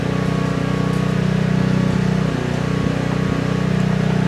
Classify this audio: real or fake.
real